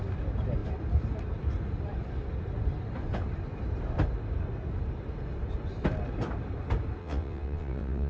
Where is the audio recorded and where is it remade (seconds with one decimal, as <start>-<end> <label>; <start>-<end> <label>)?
0.0-7.0 recorded; 7.0-8.1 remade